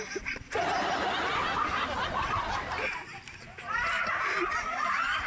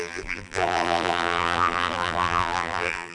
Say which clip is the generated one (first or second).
second